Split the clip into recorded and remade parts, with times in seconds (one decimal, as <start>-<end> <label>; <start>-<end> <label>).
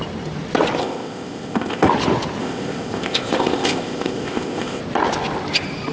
0.0-0.8 recorded; 0.8-1.9 remade; 1.9-2.4 recorded; 2.4-4.8 remade; 4.8-5.9 recorded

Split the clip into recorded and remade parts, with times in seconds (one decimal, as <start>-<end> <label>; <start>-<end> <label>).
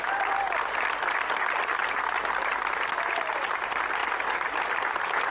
0.0-5.3 recorded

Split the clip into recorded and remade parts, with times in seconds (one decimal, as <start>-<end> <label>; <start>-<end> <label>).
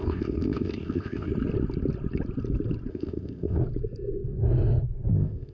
0.0-1.3 remade; 1.3-2.9 recorded; 2.9-3.6 remade; 3.6-5.1 recorded; 5.1-5.5 remade